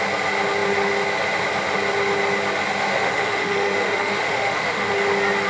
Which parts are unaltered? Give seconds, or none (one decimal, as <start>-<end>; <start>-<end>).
0.0-2.9; 4.9-5.5

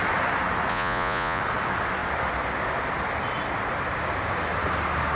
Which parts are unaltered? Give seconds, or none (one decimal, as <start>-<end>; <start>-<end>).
0.0-0.7; 1.4-5.2

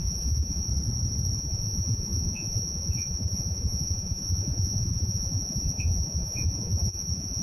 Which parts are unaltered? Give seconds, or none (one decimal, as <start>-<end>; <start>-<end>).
0.7-1.4

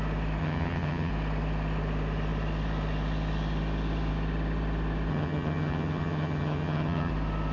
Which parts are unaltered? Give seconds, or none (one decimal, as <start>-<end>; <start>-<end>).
0.0-0.4; 1.1-5.1; 7.1-7.5

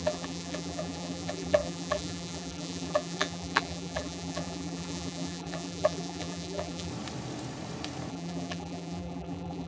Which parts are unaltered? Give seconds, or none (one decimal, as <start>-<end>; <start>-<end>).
6.9-8.1

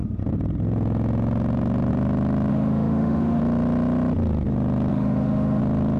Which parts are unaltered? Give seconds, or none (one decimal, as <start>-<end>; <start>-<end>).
0.0-2.5; 3.4-4.9; 5.6-6.0

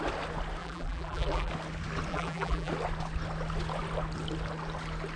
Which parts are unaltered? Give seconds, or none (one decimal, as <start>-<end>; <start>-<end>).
0.0-0.6; 1.5-2.1; 2.7-5.2

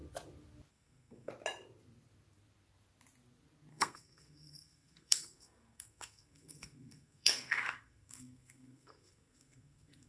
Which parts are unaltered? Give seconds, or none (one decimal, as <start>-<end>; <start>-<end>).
0.0-0.7; 1.3-3.7